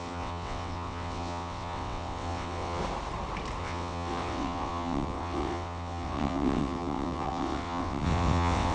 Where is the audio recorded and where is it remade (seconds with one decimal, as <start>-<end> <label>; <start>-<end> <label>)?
0.0-2.8 remade; 2.8-3.6 recorded; 3.6-8.7 remade